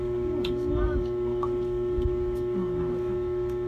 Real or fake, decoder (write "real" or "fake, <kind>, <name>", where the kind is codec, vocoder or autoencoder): fake, codec, DAC